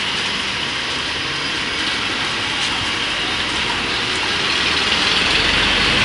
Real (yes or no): yes